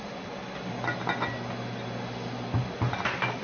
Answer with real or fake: real